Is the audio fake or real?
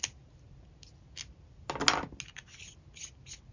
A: real